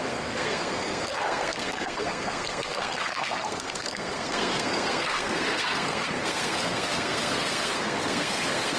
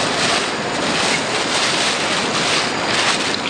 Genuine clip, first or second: second